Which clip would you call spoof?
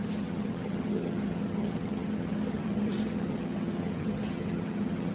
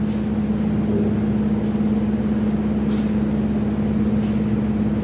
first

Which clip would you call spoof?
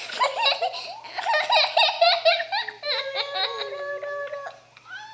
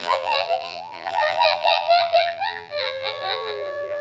second